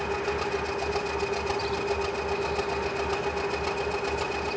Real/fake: real